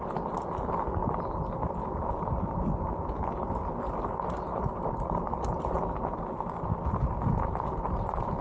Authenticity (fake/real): real